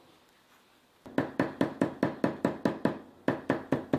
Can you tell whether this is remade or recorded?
recorded